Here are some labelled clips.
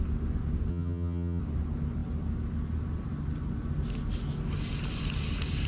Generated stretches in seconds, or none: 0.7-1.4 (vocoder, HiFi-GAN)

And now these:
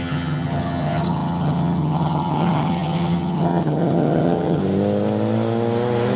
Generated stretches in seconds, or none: 0.0-4.6 (vocoder, HiFi-GAN)

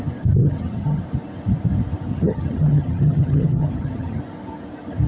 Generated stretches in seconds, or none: 0.4-1.0 (vocoder, HiFi-GAN); 2.1-4.2

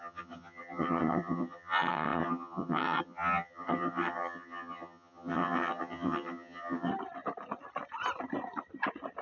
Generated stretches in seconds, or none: 0.0-6.9 (vocoder, HiFi-GAN)

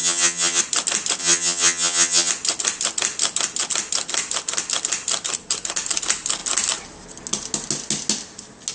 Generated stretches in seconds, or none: 0.0-0.6 (vocoder, HiFi-GAN); 1.2-2.3